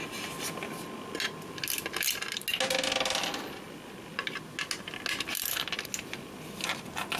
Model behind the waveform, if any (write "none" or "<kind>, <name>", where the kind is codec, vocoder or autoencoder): none